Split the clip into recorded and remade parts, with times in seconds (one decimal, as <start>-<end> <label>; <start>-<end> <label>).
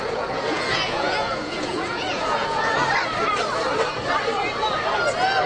0.0-2.8 remade; 2.8-5.5 recorded